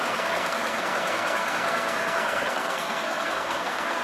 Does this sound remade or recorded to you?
remade